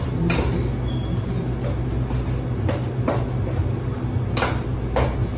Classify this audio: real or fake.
real